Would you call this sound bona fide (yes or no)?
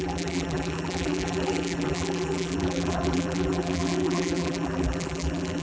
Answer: no